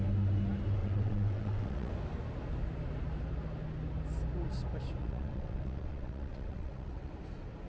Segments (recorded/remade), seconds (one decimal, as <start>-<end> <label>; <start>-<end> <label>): 0.0-0.8 recorded; 0.8-1.9 remade; 1.9-5.0 recorded; 5.0-7.1 remade; 7.1-7.7 recorded